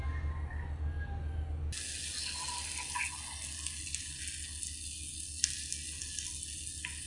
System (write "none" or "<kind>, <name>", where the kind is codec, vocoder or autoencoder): none